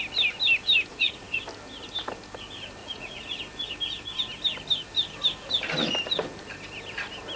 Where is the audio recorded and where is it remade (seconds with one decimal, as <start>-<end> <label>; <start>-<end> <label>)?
0.0-0.9 recorded; 0.9-1.4 remade; 1.4-2.8 recorded; 2.8-3.4 remade; 3.4-7.4 recorded